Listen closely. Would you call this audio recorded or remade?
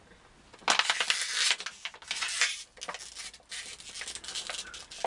recorded